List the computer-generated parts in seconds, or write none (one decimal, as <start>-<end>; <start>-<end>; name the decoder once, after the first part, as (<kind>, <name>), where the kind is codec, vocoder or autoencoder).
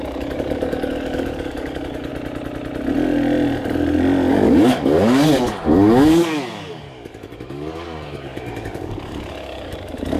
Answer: 0.0-2.1 (codec, DAC); 4.3-10.2